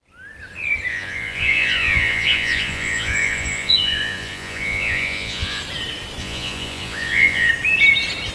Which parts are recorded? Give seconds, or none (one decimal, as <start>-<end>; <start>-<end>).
0.0-0.9; 5.6-6.2; 7.5-8.3